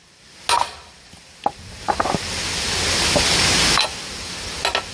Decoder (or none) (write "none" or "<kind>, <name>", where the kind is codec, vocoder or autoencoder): none